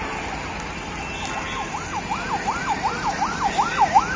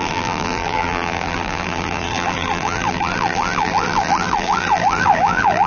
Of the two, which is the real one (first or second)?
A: first